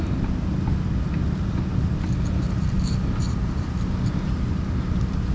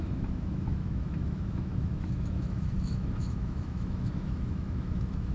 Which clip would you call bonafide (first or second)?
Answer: first